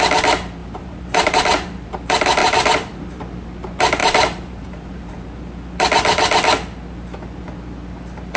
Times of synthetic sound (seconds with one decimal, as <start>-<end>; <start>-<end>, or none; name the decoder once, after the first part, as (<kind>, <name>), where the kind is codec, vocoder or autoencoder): 0.6-1.9 (vocoder, BigVGAN v2); 2.4-3.2; 4.0-5.1